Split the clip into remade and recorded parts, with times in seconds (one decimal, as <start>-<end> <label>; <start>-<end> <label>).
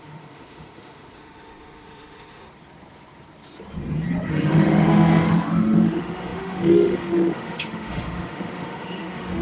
0.0-2.5 remade; 2.5-4.3 recorded; 4.3-9.4 remade